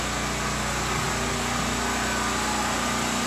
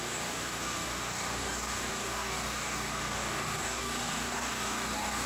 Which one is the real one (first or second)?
first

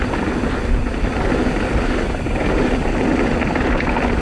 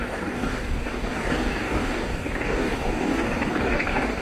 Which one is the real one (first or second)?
first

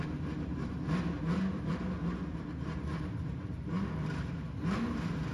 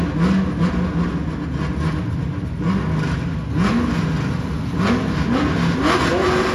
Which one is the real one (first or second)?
second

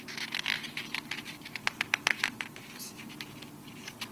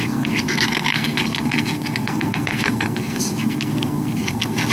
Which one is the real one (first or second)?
first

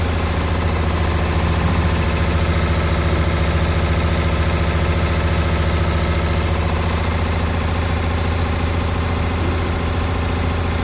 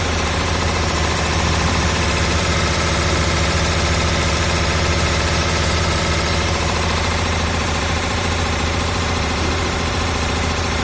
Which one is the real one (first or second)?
first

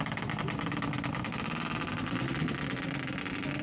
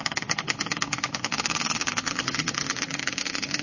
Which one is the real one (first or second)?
first